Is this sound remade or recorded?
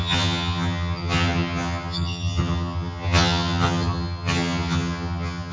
remade